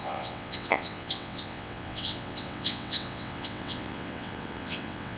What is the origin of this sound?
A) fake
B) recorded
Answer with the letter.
A